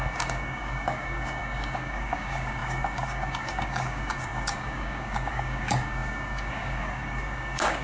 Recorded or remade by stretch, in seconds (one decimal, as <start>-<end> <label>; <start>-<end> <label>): 0.0-7.8 remade